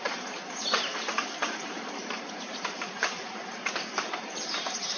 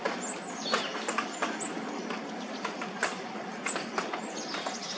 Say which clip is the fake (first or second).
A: first